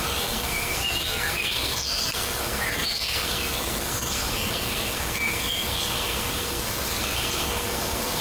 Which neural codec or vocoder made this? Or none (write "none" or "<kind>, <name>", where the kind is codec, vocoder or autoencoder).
codec, SNAC